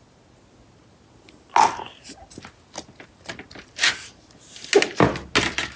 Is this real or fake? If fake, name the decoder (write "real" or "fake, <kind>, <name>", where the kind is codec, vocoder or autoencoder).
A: real